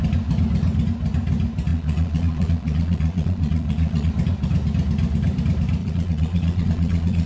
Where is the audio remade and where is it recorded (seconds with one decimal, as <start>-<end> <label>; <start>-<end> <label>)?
0.0-1.7 recorded; 1.7-4.1 remade; 4.1-5.8 recorded; 5.8-7.3 remade